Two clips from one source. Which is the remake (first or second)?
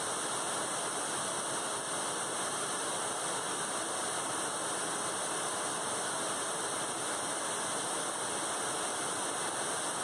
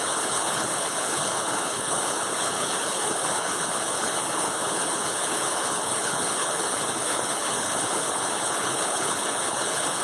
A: second